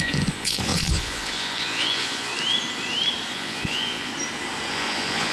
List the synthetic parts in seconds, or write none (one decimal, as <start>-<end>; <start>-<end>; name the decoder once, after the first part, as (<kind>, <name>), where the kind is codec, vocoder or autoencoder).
0.0-2.3 (vocoder, Vocos); 3.3-4.1; 4.7-5.3